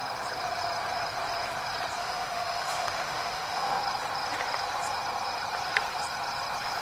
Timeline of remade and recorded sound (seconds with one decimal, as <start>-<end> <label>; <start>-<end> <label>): 0.0-2.0 recorded; 2.0-3.8 remade; 3.8-6.8 recorded